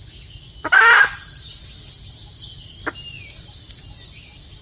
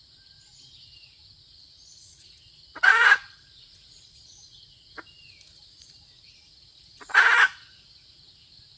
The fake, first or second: second